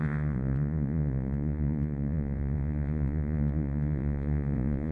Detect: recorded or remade remade